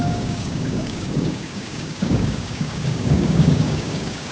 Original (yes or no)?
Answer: no